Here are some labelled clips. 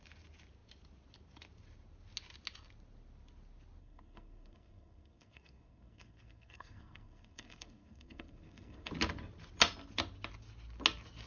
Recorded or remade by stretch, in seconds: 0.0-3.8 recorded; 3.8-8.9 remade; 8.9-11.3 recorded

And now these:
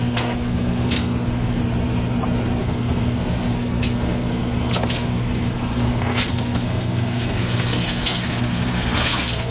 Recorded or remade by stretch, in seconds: 0.0-1.6 remade; 1.6-2.6 recorded; 2.6-9.5 remade

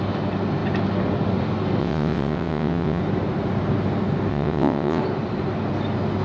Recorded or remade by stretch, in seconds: 0.0-1.8 recorded; 1.8-3.0 remade; 3.0-4.3 recorded; 4.3-5.0 remade; 5.0-6.2 recorded

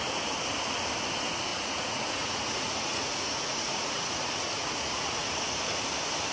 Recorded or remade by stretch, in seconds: 0.0-1.5 recorded; 1.5-5.3 remade; 5.3-6.3 recorded

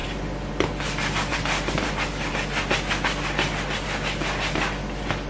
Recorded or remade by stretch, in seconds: 0.0-0.5 remade; 0.5-1.3 recorded; 1.3-2.3 remade; 2.3-5.3 recorded